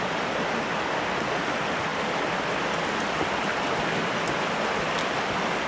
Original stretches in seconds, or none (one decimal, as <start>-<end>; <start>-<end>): 0.0-5.7